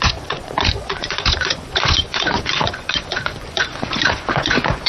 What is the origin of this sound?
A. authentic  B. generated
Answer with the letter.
B